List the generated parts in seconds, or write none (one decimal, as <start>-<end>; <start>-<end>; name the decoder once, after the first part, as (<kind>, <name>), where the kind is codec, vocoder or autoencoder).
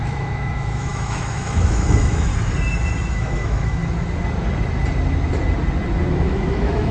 0.0-2.3 (autoencoder, DAC-VAE); 3.1-3.8; 6.1-6.9